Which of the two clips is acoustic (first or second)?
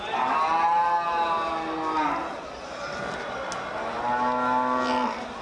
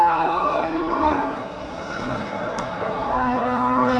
first